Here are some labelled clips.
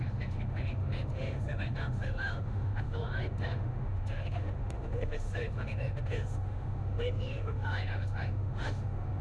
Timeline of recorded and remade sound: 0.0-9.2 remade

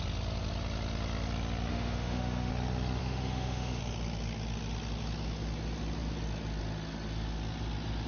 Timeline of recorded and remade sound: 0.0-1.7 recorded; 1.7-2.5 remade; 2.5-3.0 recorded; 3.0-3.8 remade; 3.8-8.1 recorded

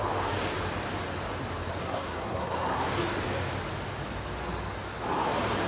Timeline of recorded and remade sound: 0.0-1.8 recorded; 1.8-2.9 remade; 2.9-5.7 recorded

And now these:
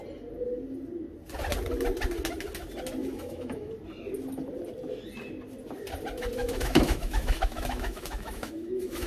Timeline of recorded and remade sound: 0.0-3.0 recorded; 3.0-3.7 remade; 3.7-6.4 recorded; 6.4-9.1 remade

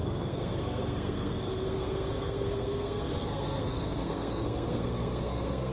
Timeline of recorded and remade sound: 0.0-5.7 remade

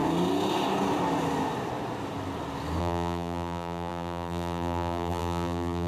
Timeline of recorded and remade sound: 0.0-2.8 recorded; 2.8-5.9 remade

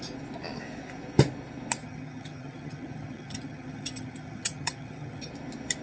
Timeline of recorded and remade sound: 0.0-1.8 recorded; 1.8-5.3 remade; 5.3-5.8 recorded